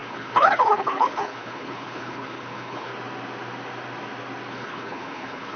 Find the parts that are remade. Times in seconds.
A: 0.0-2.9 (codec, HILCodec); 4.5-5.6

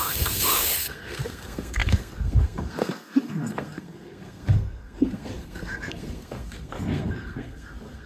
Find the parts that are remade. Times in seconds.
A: 0.0-8.1 (codec, SNAC)